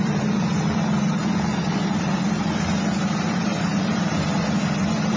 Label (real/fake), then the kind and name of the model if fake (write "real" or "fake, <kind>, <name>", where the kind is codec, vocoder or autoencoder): fake, vocoder, BigVGAN v2